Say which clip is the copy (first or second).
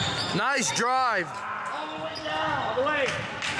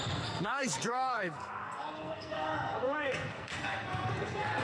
second